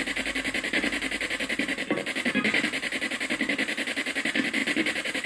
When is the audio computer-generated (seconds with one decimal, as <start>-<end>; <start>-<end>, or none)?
4.6-5.3